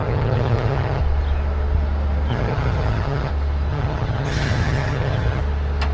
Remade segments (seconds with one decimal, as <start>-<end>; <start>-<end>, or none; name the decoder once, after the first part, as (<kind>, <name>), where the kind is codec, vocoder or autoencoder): 0.0-1.0 (vocoder, HiFi-GAN); 2.3-3.3; 3.7-5.4